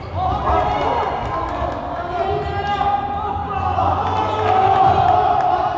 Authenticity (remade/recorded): recorded